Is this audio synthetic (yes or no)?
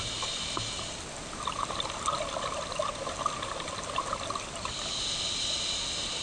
no